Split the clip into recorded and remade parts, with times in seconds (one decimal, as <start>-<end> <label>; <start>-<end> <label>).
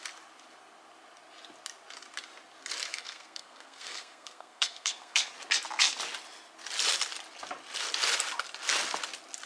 0.0-2.9 recorded; 2.9-5.3 remade; 5.3-9.5 recorded